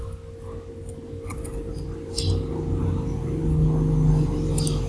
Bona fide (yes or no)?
yes